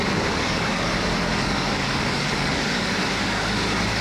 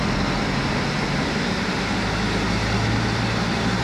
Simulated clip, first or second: first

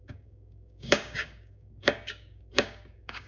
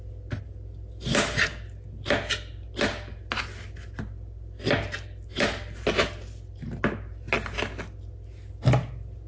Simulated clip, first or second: first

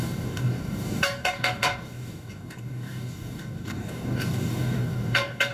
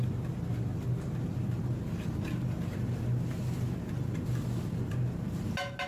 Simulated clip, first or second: first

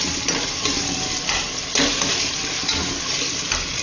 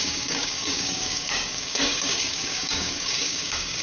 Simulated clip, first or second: second